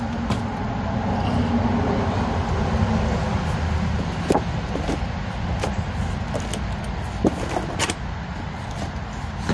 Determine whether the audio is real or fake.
real